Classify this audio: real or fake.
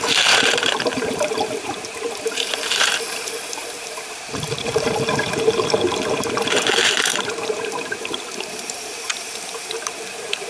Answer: fake